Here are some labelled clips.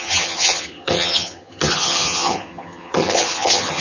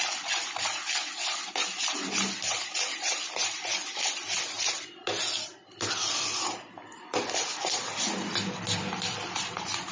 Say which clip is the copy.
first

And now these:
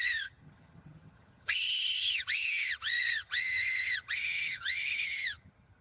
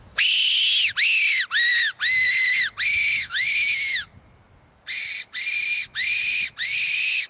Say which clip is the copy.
first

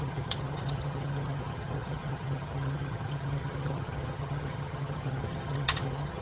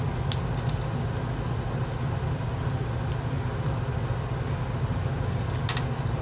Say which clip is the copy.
first